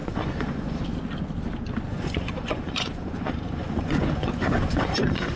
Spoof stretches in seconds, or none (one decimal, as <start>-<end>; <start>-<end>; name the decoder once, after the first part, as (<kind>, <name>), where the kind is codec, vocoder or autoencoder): 0.0-0.8 (vocoder, Vocos); 1.9-5.4